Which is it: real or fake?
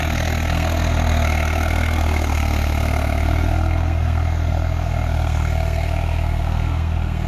fake